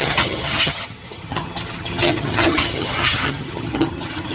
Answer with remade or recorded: remade